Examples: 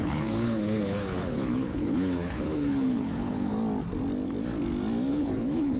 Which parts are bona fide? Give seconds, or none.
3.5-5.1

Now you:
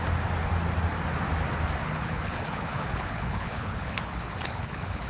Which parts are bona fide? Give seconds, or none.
0.0-1.8